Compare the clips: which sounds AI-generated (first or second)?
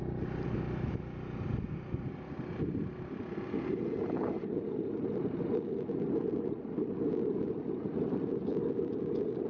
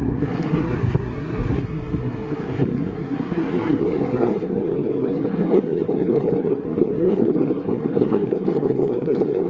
second